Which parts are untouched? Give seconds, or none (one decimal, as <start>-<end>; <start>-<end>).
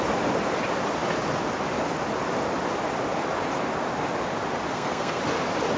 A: 0.0-4.7; 5.2-5.8